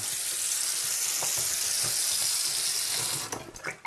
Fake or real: real